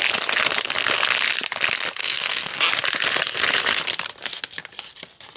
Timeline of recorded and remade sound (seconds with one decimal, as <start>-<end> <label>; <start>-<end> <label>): 0.0-2.0 recorded; 2.0-2.6 remade; 2.6-5.4 recorded